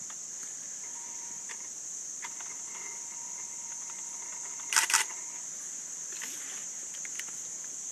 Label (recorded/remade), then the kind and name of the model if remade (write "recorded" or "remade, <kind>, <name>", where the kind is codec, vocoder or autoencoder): recorded